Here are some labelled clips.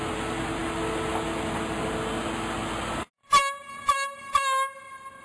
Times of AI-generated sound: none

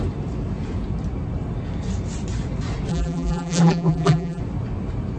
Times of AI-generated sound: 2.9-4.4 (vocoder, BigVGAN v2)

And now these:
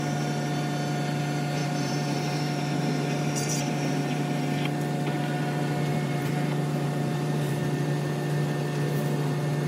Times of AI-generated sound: 1.6-4.2 (vocoder, BigVGAN v2); 5.9-7.5